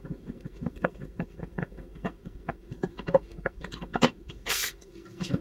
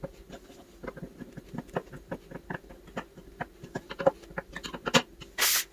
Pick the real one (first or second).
second